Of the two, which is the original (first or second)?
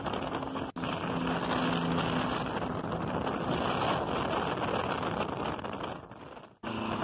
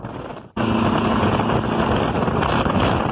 first